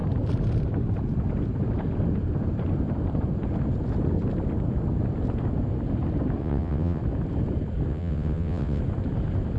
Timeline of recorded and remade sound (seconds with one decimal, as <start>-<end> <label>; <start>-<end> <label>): 0.0-6.4 recorded; 6.4-7.0 remade; 7.0-7.9 recorded; 7.9-8.8 remade; 8.8-9.6 recorded